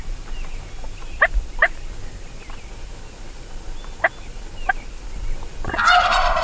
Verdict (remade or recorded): recorded